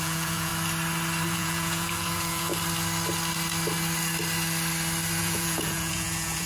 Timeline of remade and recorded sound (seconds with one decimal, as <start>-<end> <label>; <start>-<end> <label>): 0.0-0.5 remade; 0.5-1.3 recorded; 1.3-2.5 remade; 2.5-5.2 recorded; 5.2-6.5 remade